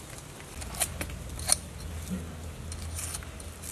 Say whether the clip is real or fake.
real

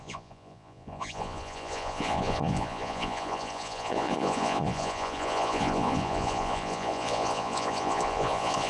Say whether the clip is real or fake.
fake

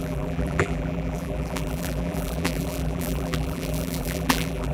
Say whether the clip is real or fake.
fake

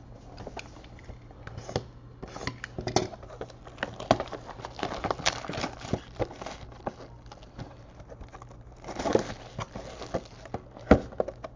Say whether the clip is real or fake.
real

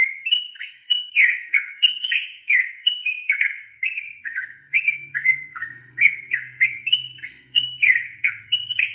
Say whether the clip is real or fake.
fake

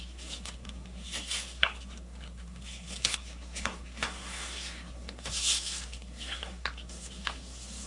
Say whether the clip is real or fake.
fake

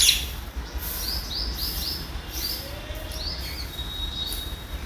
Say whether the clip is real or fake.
real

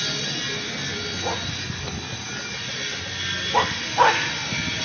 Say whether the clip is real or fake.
real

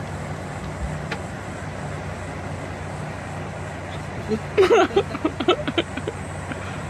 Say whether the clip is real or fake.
real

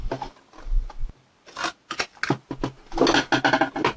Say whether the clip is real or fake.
real